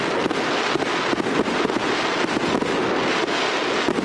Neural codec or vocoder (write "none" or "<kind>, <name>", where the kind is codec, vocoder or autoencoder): none